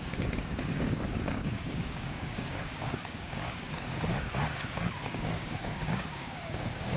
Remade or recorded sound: remade